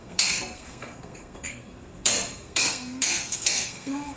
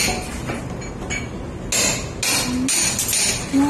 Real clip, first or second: second